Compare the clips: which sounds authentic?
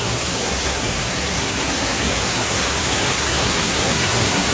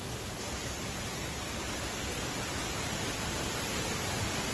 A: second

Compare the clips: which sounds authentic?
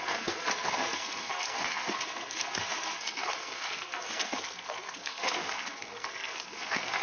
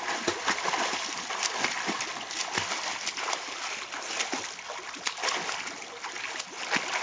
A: second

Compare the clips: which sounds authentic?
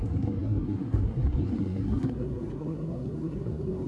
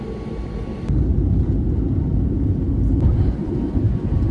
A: second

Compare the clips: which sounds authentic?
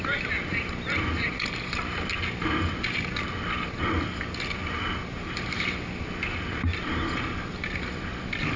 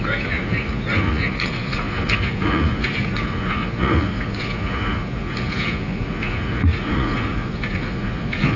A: first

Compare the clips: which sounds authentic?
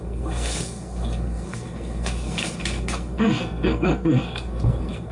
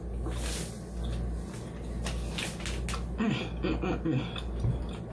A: second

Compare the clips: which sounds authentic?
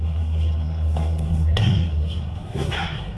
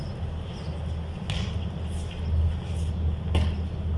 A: second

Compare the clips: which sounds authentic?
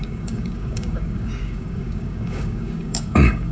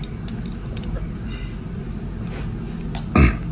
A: second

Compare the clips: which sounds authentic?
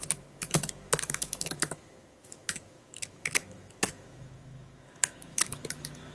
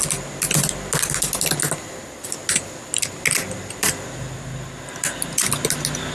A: second